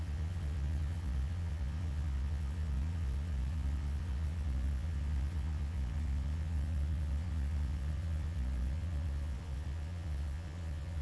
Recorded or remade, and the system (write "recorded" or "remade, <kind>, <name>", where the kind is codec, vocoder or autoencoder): remade, vocoder, Vocos